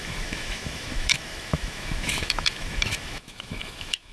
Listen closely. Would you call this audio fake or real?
fake